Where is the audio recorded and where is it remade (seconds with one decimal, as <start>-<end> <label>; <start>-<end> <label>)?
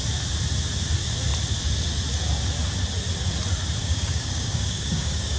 0.0-3.8 recorded; 3.8-5.4 remade